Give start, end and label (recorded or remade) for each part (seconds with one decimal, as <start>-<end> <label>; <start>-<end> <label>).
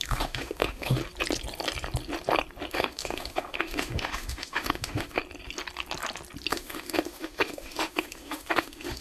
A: 0.0-1.0 remade; 1.0-2.7 recorded; 2.7-5.2 remade; 5.2-6.5 recorded; 6.5-9.0 remade